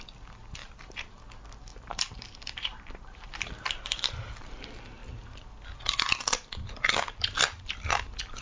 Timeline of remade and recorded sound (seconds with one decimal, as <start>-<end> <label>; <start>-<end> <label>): 0.0-0.6 recorded; 0.6-1.2 remade; 1.2-1.7 recorded; 1.7-4.3 remade; 4.3-8.4 recorded